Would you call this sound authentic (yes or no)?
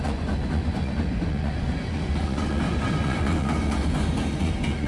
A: no